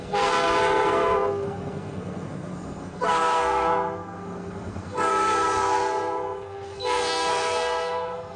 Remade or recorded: remade